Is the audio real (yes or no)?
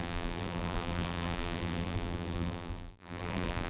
no